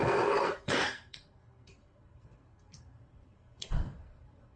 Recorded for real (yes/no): no